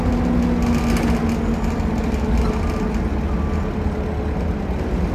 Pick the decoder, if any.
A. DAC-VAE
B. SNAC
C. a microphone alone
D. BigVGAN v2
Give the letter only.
C